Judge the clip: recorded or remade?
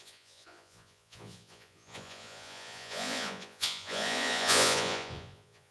remade